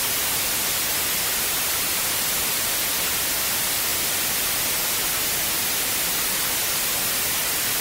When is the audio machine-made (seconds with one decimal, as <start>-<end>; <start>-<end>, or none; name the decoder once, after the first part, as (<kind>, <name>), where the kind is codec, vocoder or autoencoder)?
none